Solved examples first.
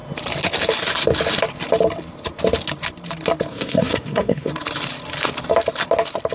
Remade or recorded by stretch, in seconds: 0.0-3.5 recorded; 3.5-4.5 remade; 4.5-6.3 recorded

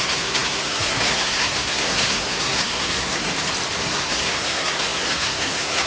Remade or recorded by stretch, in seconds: 0.0-3.3 remade; 3.3-3.8 recorded; 3.8-5.9 remade